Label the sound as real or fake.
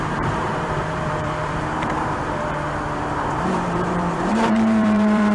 fake